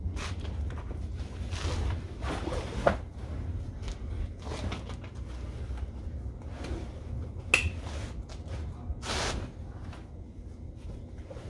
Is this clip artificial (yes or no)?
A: no